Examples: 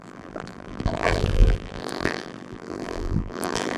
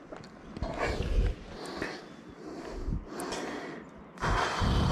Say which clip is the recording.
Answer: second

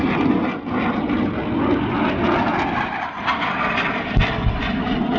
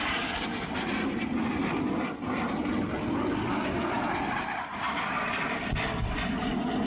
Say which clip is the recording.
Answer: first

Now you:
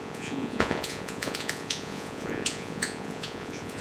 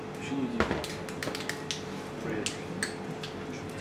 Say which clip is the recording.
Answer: second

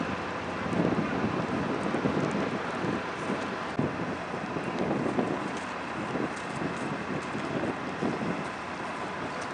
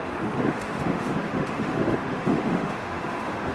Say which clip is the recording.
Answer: first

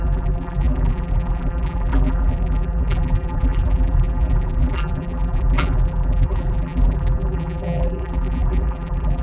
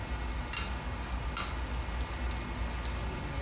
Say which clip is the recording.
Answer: second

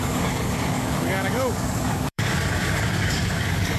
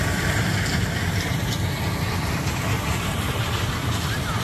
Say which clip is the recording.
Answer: second